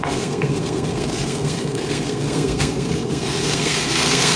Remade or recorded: remade